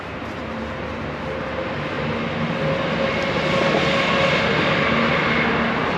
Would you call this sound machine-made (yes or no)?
no